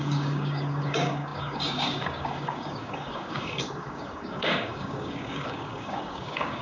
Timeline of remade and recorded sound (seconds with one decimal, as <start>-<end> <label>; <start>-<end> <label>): 0.0-6.6 remade